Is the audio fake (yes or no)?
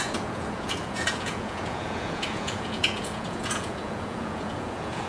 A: yes